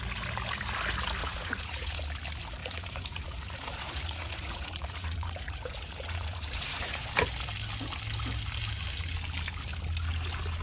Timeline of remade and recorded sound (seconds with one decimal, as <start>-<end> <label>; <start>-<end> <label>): 0.0-1.2 recorded; 1.2-2.0 remade; 2.0-2.6 recorded; 2.6-7.1 remade; 7.1-10.6 recorded